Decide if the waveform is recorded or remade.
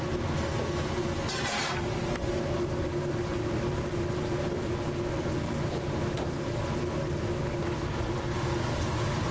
recorded